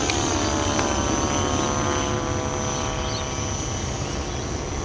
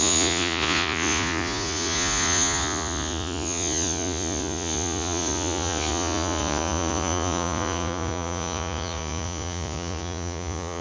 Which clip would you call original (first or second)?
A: first